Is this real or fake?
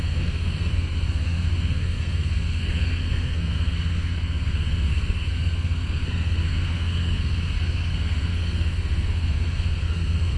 fake